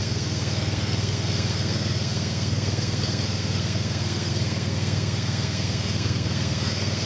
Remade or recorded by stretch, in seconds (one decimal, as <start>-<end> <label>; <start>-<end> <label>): 0.0-7.1 remade